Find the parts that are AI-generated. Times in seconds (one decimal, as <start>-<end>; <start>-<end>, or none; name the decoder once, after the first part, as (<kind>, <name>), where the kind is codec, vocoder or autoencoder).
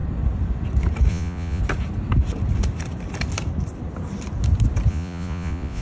1.1-1.6 (vocoder, Vocos); 4.9-5.8